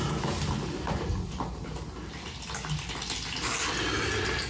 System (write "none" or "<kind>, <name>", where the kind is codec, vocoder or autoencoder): none